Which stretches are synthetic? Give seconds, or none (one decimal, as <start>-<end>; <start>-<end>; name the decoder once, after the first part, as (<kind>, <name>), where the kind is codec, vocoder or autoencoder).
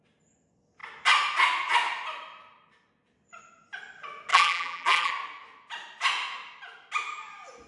4.3-5.1 (vocoder, BigVGAN v2)